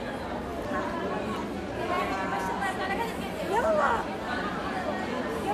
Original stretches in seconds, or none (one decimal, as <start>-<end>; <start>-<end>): 0.0-5.5